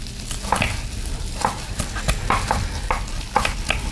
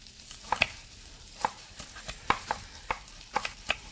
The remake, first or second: second